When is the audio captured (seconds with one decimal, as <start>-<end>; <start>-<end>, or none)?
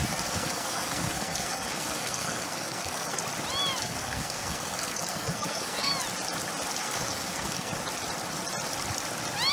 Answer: 3.2-3.8; 5.9-6.8; 7.7-9.5